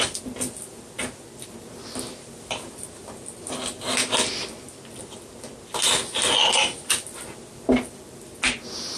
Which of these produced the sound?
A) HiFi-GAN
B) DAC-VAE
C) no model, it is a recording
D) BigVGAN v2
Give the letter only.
C